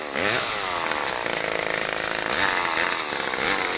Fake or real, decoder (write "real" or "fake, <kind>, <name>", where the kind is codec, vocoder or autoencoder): real